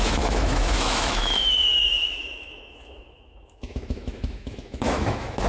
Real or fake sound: fake